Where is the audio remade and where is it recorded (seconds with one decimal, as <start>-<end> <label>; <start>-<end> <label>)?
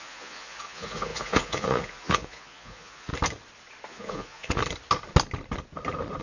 0.0-3.1 remade; 3.1-3.9 recorded; 3.9-4.6 remade; 4.6-6.2 recorded